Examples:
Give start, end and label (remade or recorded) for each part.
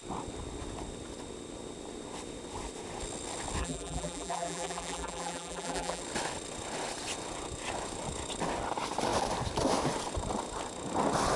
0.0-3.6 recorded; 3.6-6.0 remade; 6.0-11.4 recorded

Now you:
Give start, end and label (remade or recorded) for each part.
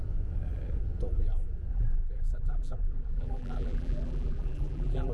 0.0-1.7 recorded; 1.7-5.1 remade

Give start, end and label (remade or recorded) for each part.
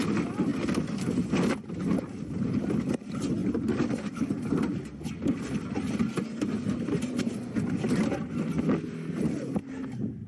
0.0-10.3 recorded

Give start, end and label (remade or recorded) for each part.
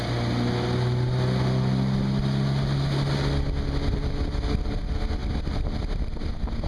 0.0-5.2 recorded; 5.2-6.2 remade; 6.2-6.7 recorded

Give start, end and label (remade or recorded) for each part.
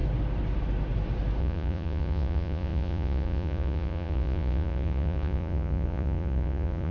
0.0-1.4 recorded; 1.4-6.9 remade